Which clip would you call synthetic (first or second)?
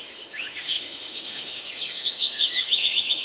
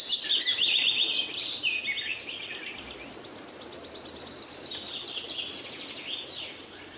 first